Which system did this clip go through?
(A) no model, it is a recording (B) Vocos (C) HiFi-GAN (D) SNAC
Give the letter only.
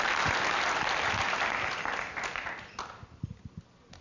A